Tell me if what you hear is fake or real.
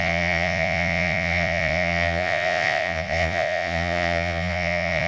fake